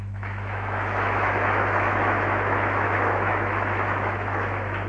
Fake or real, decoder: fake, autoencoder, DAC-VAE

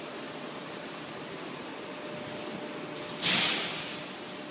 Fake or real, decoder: real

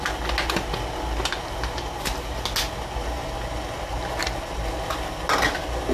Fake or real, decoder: real